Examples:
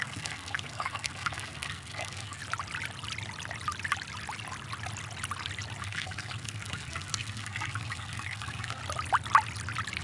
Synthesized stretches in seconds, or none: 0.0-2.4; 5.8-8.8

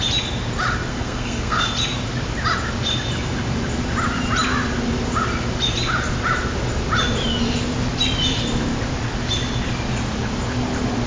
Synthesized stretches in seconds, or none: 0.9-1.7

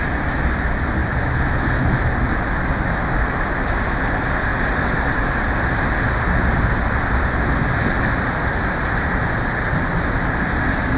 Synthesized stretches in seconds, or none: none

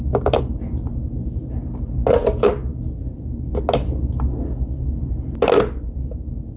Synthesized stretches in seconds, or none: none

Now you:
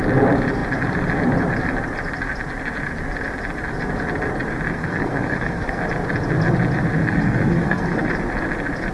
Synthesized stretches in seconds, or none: 4.7-5.8; 7.0-8.1

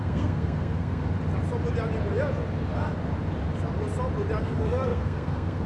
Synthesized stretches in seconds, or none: 0.0-1.0; 4.4-5.7